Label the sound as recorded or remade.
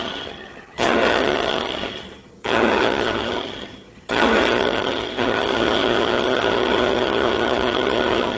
remade